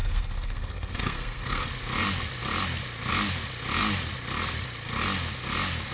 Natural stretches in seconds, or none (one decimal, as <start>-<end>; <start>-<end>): 1.7-5.9